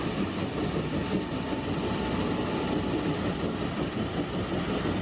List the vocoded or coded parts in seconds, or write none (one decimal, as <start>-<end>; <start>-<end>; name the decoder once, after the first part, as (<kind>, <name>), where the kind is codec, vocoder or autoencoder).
1.0-4.0 (vocoder, BigVGAN v2)